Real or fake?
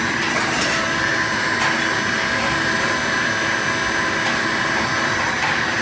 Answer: real